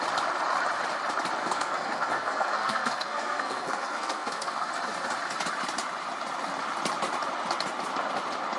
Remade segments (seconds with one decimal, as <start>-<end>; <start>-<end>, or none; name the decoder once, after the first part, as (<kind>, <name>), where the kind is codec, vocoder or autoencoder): 1.4-4.7 (codec, SNAC)